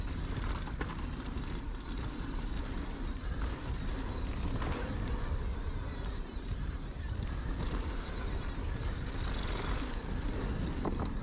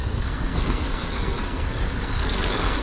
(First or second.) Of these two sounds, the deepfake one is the second